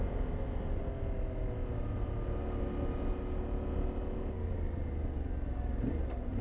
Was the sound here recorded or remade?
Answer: recorded